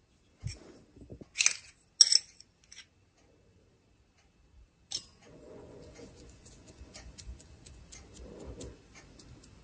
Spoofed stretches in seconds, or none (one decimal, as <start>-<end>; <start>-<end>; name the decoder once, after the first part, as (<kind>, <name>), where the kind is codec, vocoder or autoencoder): 5.1-7.8 (vocoder, Vocos)